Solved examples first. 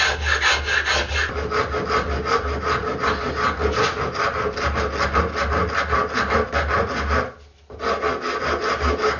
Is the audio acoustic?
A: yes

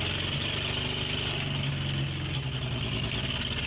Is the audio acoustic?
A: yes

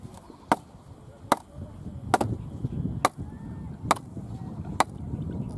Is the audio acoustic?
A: yes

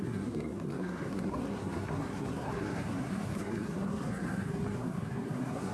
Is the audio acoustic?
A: no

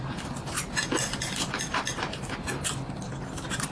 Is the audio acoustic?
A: yes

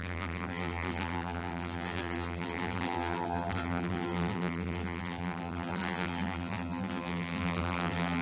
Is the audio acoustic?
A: no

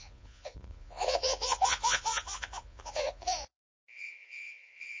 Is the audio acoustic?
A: no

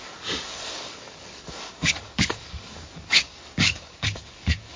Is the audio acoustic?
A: no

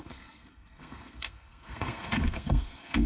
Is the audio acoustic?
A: no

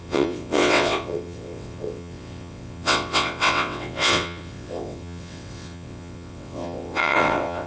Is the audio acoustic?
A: no